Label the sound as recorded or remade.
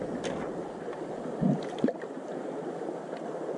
recorded